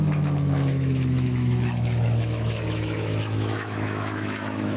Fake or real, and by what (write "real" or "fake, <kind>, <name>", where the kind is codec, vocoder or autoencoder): fake, autoencoder, DAC-VAE